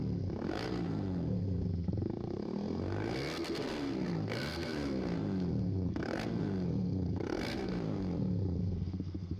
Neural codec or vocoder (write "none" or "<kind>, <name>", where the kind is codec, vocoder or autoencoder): codec, SNAC